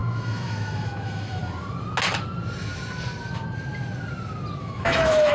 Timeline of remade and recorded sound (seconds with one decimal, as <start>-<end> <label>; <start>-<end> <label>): 0.0-1.4 remade; 1.4-4.6 recorded; 4.6-5.3 remade